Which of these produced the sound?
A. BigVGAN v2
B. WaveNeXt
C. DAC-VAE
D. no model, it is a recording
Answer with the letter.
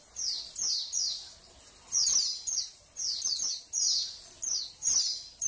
D